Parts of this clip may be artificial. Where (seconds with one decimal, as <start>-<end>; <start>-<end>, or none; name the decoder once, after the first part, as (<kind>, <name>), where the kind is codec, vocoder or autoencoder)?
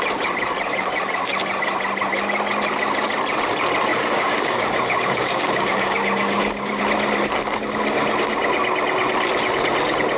3.9-6.8 (codec, DAC)